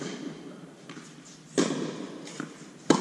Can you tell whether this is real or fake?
real